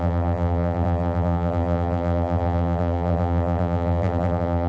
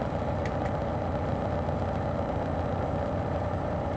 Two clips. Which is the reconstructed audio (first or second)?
first